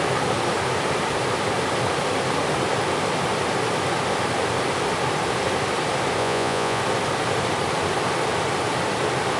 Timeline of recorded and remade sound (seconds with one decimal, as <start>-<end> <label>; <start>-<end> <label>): 0.0-6.2 recorded; 6.2-6.8 remade; 6.8-9.4 recorded